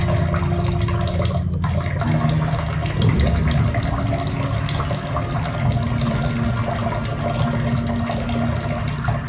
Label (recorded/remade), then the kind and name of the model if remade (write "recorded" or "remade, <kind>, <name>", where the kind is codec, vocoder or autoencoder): recorded